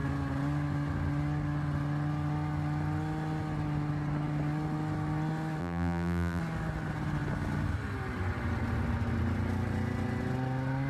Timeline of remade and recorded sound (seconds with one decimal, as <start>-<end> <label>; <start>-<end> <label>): 0.0-5.6 recorded; 5.6-6.4 remade; 6.4-10.9 recorded